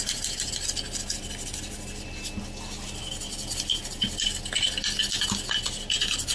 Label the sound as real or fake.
real